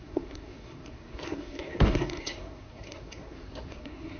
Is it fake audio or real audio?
fake